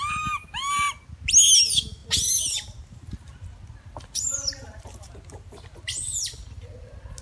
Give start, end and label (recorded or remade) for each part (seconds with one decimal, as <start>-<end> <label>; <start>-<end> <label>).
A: 0.0-7.2 recorded